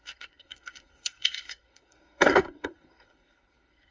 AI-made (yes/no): yes